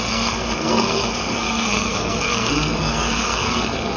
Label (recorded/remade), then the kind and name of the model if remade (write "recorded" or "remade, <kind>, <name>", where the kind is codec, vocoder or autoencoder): remade, codec, SNAC